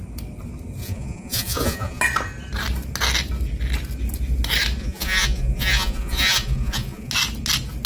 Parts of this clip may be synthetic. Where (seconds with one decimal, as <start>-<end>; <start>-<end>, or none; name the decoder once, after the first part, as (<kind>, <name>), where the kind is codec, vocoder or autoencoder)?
0.8-2.0 (vocoder, Vocos); 4.8-7.1